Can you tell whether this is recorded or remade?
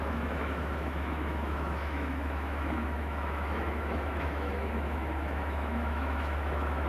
remade